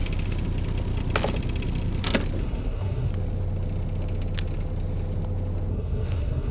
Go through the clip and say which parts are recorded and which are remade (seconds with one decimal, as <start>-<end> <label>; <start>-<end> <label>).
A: 0.0-2.4 recorded; 2.4-3.1 remade; 3.1-5.7 recorded; 5.7-6.5 remade